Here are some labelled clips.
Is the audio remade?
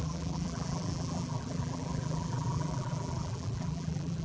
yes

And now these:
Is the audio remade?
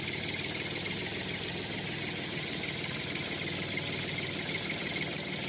no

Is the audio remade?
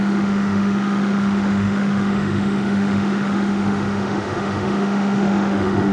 yes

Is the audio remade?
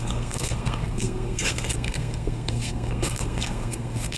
yes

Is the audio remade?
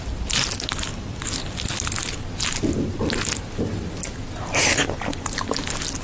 no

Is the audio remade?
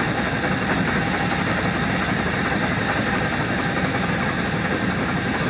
no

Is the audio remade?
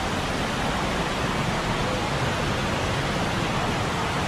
no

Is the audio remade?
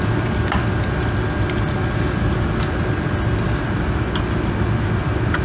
no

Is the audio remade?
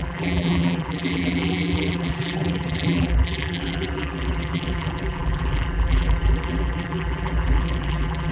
yes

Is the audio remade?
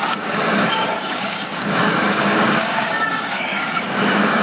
yes